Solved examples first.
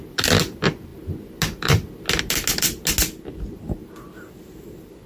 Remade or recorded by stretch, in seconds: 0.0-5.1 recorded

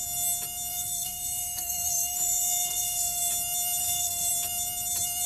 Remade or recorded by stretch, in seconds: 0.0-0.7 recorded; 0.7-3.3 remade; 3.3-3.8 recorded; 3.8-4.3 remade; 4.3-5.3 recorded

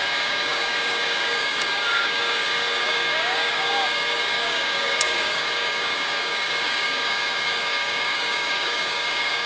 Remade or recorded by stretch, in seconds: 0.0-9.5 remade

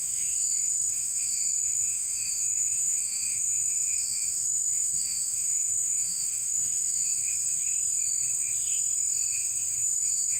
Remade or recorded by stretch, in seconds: 0.0-7.2 remade; 7.2-9.8 recorded; 9.8-10.4 remade

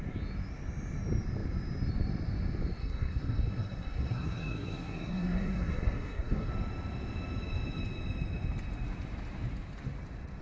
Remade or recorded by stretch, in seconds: 0.0-2.8 recorded; 2.8-6.5 remade; 6.5-10.4 recorded